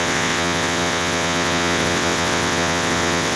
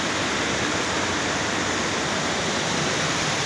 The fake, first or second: first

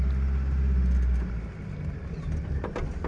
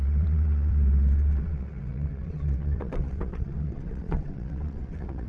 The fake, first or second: second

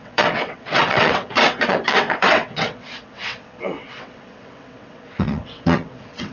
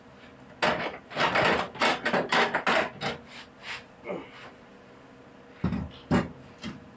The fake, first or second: first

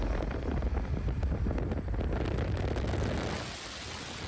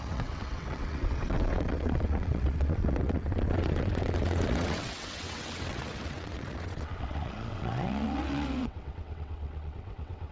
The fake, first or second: second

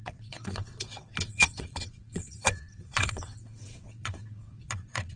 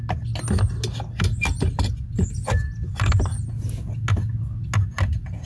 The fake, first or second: first